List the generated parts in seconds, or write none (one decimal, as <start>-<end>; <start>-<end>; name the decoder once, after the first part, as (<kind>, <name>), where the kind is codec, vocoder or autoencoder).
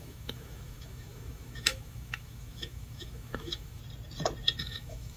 0.0-3.8 (autoencoder, DAC-VAE); 4.6-5.2